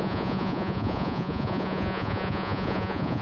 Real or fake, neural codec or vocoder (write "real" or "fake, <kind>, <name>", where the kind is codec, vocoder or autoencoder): fake, vocoder, Vocos